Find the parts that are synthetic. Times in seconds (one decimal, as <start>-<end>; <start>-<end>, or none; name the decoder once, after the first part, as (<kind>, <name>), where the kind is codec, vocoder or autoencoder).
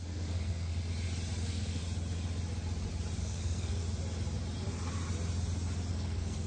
0.0-0.7 (codec, SNAC); 1.4-1.8; 3.2-3.8; 5.9-6.5